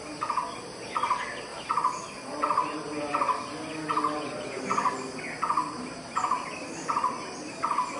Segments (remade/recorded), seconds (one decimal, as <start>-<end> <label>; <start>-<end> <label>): 0.0-8.0 recorded